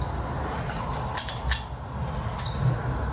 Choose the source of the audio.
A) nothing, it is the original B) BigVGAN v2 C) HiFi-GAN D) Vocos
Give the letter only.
A